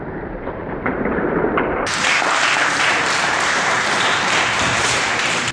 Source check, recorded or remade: remade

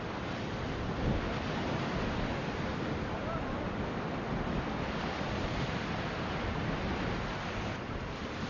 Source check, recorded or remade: recorded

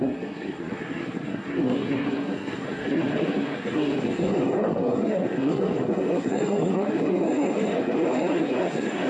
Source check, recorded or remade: remade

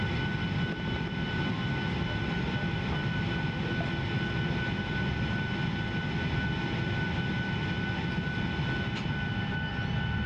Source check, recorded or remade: recorded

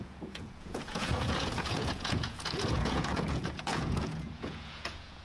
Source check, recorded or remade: remade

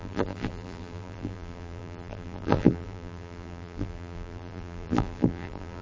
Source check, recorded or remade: remade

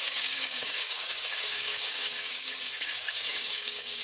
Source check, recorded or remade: remade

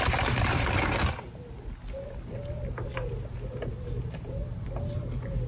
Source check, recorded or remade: recorded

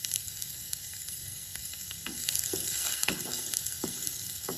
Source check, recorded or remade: remade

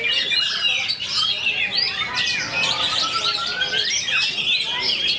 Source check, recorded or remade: recorded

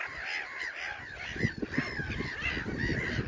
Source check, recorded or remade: recorded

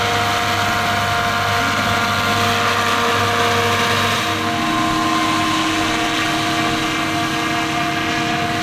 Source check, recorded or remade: recorded